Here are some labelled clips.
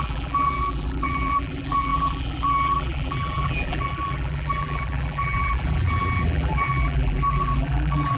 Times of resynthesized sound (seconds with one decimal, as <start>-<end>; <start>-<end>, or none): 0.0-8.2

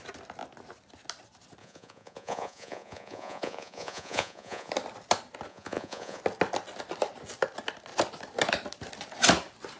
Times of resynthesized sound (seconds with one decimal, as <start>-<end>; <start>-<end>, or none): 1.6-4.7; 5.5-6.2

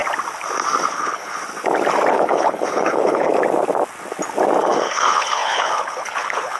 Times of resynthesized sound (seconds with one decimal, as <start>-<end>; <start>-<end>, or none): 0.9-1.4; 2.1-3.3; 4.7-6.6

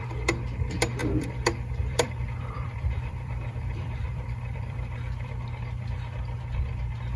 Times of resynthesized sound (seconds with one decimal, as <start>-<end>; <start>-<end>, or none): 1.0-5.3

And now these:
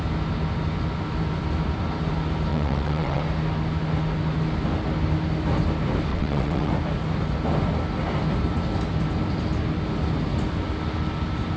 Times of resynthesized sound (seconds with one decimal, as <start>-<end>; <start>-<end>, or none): 2.5-3.2; 6.1-6.7